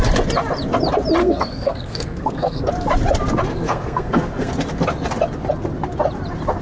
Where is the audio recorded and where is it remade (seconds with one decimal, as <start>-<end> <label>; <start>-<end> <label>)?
0.0-1.2 recorded; 1.2-2.7 remade; 2.7-3.5 recorded; 3.5-4.5 remade; 4.5-6.6 recorded